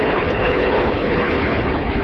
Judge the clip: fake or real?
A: fake